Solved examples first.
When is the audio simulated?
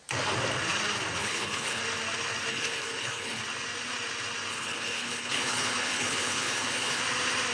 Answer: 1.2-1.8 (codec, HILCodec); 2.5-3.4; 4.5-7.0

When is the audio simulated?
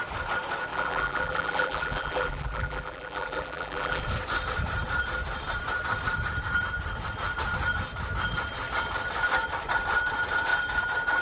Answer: 0.7-4.0 (vocoder, BigVGAN v2)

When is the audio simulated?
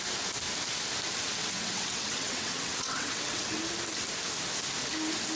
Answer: 1.4-3.6 (vocoder, WaveNeXt)